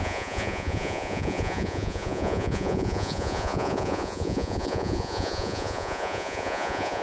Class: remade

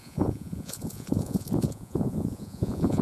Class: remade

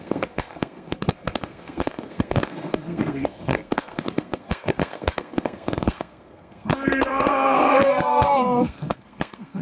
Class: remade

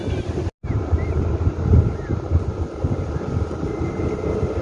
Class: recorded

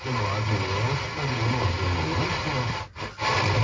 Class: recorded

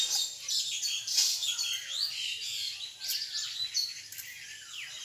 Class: recorded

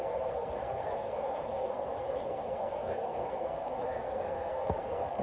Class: remade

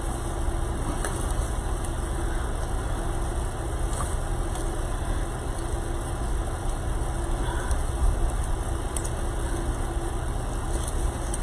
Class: recorded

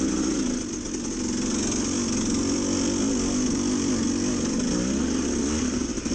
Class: recorded